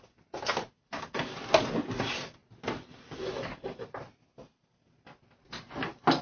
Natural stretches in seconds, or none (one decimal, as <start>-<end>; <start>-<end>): 0.0-6.2